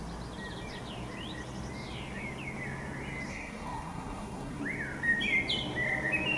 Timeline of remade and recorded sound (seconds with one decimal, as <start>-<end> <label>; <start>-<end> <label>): 0.0-3.3 recorded; 3.3-4.6 remade; 4.6-6.4 recorded